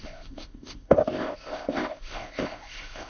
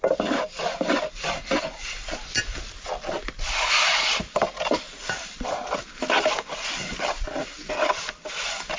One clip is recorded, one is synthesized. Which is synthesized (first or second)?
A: first